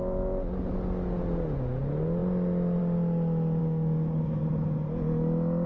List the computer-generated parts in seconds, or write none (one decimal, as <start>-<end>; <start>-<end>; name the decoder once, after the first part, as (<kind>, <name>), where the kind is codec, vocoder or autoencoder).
3.6-4.4 (codec, DAC)